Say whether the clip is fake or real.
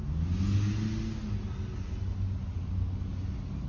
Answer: real